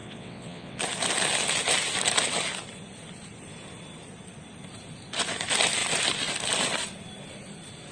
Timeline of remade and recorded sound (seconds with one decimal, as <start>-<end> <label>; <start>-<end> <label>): 0.0-0.8 remade; 0.8-7.9 recorded